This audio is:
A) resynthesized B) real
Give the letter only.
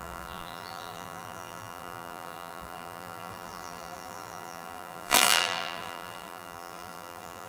A